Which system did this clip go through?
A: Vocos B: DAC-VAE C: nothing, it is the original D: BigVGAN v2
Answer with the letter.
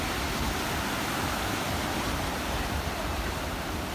C